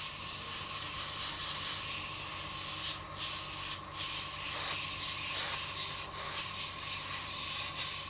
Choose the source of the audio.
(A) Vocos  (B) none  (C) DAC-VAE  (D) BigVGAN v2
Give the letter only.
B